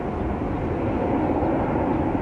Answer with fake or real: real